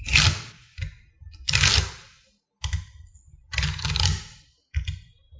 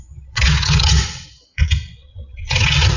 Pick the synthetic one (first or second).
second